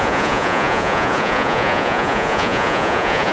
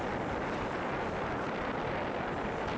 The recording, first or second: second